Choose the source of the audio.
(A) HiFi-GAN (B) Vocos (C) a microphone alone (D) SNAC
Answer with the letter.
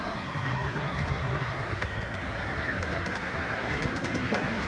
D